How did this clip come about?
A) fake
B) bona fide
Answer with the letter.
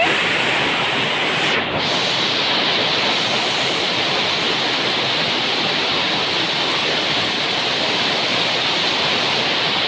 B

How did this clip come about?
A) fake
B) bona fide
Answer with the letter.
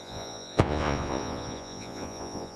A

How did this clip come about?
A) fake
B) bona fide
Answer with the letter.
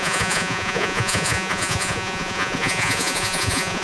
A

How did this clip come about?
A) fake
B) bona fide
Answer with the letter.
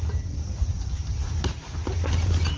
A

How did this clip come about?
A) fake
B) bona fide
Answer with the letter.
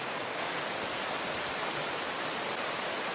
B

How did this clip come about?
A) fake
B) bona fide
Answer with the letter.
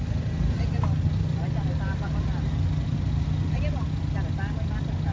B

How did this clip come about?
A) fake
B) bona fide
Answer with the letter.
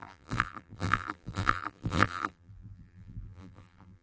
A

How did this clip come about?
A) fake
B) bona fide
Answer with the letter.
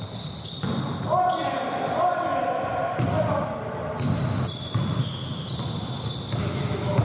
B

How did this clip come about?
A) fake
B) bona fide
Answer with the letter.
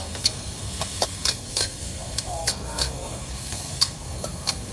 A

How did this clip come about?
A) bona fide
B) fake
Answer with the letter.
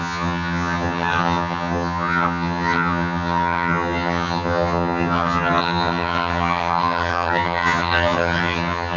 B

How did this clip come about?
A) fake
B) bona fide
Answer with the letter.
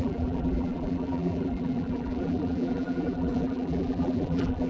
A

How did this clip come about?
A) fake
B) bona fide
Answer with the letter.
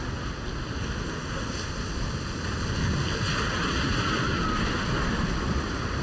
B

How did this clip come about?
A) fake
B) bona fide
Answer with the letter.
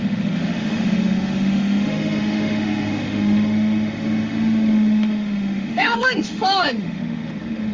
A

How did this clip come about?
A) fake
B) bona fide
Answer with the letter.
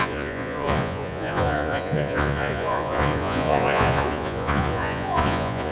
A